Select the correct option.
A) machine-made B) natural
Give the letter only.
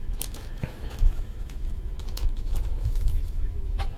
A